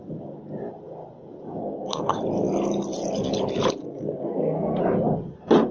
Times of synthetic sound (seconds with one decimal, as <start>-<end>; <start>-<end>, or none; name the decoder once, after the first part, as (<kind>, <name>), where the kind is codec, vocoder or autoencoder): 1.6-2.2 (codec, SNAC); 3.8-4.8